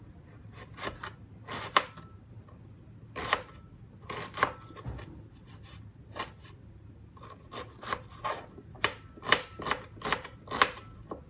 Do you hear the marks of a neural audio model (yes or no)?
no